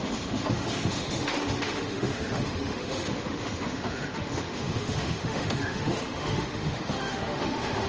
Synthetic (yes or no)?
yes